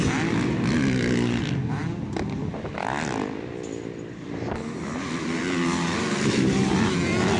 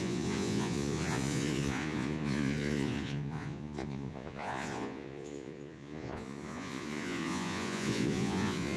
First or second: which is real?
first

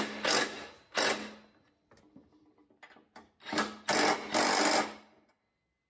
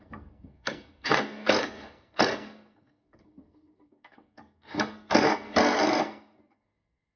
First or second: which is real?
first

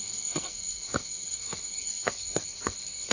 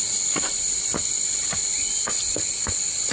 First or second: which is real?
second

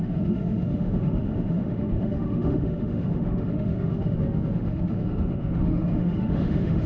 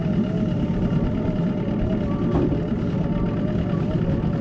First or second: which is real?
second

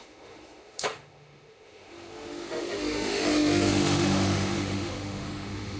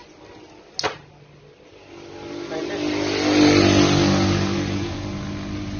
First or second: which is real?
second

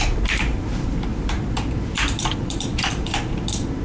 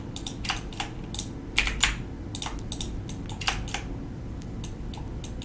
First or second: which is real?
second